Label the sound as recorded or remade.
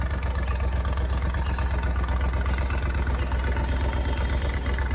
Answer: recorded